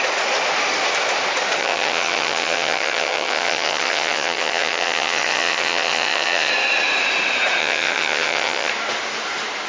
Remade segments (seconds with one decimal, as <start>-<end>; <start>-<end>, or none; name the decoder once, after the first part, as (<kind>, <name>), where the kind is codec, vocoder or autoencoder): 1.6-6.5 (vocoder, HiFi-GAN); 7.6-8.7

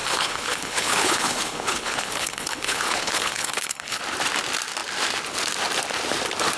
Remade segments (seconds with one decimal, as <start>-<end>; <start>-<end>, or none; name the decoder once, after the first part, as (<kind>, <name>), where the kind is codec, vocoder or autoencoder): 0.0-4.0 (codec, HILCodec)

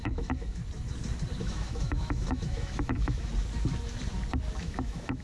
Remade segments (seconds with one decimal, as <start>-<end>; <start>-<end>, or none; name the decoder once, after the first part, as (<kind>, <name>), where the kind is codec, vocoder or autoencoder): 0.0-0.6 (autoencoder, DAC-VAE); 1.4-3.3; 4.6-5.2

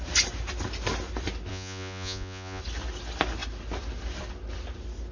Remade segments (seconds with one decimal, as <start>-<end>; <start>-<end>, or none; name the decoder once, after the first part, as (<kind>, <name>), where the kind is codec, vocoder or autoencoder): 1.5-2.6 (vocoder, Vocos)

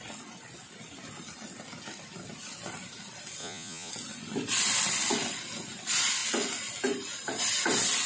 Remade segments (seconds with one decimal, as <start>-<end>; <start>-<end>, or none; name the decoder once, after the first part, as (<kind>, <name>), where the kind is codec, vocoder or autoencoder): 3.4-3.9 (vocoder, Vocos)

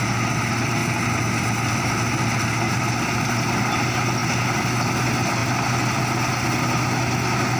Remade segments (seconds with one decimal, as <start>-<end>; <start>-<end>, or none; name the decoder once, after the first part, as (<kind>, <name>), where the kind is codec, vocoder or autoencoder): none